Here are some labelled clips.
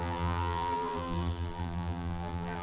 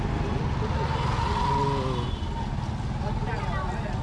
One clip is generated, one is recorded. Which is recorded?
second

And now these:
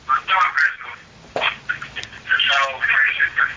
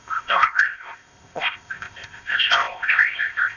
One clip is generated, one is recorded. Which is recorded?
first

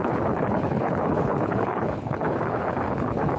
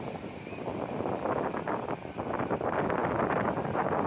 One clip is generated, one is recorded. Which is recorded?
second